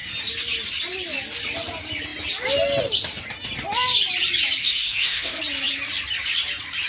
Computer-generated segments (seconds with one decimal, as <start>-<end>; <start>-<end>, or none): 4.6-5.4